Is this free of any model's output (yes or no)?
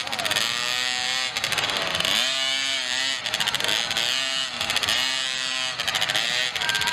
yes